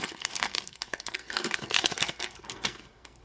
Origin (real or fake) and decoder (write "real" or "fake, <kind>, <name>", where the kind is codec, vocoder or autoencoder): fake, codec, SNAC